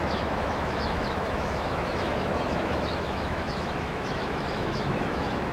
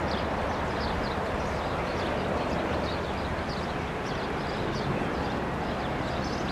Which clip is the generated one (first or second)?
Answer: first